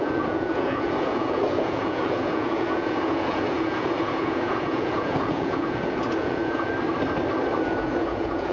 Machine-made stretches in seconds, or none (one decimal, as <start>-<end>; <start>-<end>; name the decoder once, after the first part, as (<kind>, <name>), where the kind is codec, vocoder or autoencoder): 0.0-6.7 (vocoder, Vocos); 7.6-8.5